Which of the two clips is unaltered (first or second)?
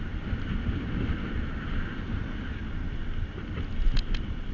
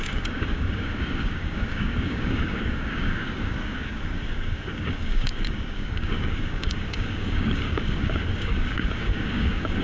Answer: first